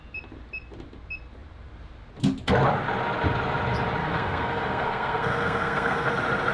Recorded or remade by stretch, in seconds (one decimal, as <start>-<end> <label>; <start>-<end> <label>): 0.0-4.0 recorded; 4.0-6.1 remade; 6.1-6.5 recorded